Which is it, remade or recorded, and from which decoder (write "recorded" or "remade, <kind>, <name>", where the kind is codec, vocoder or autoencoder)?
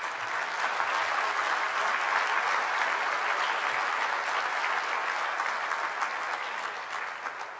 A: recorded